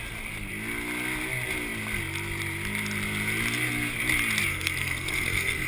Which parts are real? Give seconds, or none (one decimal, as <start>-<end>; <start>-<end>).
0.0-4.5